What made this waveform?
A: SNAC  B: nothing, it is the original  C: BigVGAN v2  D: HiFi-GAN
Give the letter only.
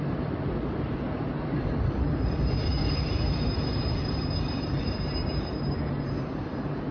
C